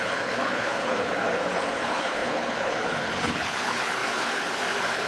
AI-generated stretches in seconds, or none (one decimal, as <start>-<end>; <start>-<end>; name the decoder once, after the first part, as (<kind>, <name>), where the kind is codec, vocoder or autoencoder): 0.0-5.1 (codec, HILCodec)